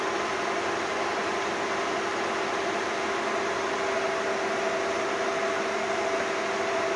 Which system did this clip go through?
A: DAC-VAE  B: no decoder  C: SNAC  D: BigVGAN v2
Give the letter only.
B